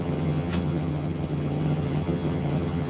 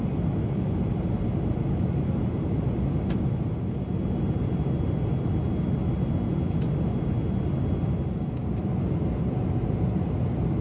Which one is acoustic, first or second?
second